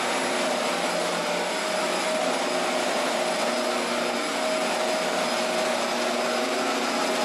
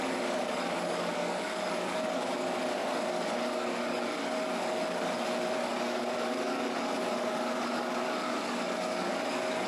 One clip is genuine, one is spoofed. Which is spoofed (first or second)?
second